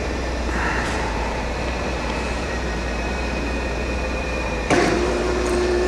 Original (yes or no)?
no